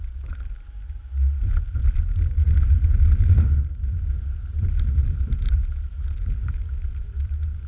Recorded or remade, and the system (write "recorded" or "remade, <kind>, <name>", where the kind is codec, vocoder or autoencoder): remade, vocoder, BigVGAN v2